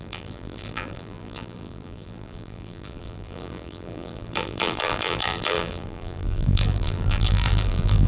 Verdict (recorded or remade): remade